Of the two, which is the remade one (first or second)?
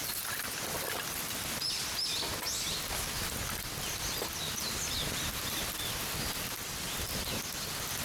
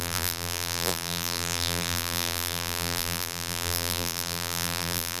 second